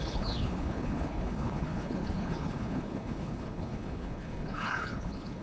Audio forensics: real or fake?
fake